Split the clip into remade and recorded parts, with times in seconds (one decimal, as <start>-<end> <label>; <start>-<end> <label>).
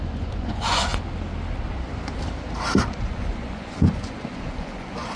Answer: 0.0-0.9 remade; 0.9-2.9 recorded; 2.9-5.2 remade